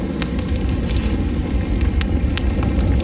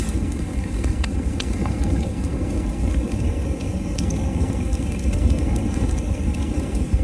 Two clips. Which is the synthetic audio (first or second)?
second